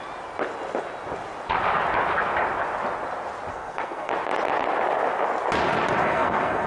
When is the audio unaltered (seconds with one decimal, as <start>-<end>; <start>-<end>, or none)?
0.0-3.5; 4.1-6.0